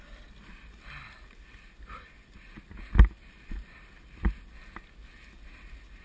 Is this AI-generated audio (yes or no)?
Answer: no